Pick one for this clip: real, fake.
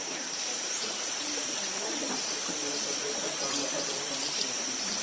fake